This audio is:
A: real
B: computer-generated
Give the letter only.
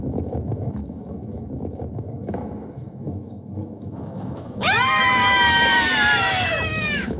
B